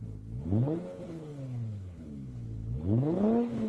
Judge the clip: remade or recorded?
remade